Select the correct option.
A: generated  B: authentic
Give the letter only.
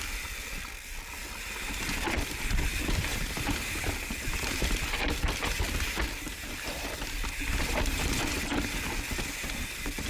A